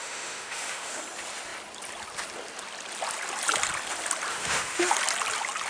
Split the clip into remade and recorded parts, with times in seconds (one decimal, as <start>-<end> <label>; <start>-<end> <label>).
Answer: 0.0-1.0 remade; 1.0-4.3 recorded; 4.3-4.9 remade; 4.9-5.7 recorded